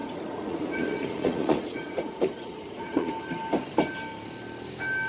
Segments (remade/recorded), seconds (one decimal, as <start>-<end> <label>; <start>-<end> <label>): 0.0-3.1 remade; 3.1-5.1 recorded

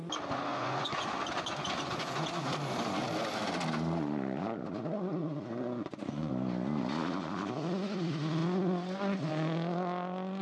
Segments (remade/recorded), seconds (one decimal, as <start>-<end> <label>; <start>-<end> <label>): 0.0-0.5 recorded; 0.5-2.3 remade; 2.3-5.2 recorded; 5.2-6.3 remade; 6.3-10.4 recorded

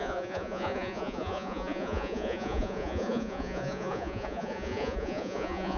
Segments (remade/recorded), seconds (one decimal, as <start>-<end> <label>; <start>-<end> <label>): 0.0-5.8 remade